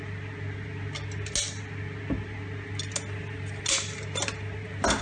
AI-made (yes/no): no